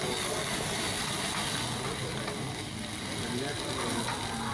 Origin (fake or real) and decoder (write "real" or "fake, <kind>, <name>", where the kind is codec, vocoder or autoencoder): real